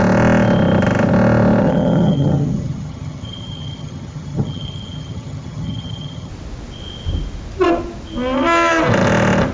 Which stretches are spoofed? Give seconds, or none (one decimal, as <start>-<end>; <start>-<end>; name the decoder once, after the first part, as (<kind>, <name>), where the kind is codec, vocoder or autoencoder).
1.6-6.3 (vocoder, HiFi-GAN)